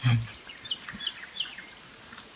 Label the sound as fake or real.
real